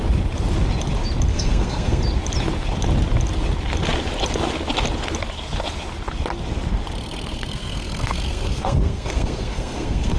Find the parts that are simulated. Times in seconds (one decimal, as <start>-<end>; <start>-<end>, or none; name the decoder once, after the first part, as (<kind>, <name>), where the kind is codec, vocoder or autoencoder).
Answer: 1.3-2.0 (codec, SNAC); 7.3-10.2